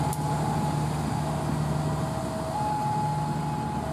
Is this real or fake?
real